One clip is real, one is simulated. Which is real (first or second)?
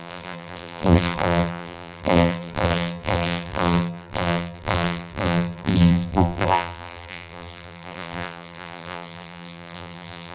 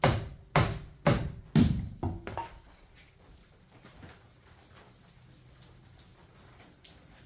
second